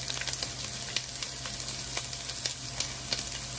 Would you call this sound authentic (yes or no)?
yes